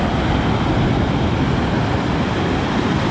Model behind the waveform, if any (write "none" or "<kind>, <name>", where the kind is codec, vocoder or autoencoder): none